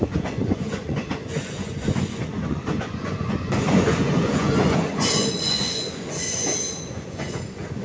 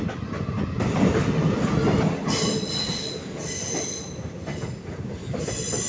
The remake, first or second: first